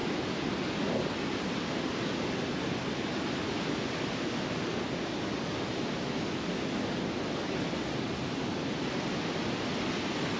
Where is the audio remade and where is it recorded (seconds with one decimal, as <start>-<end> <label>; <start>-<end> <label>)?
0.0-10.4 recorded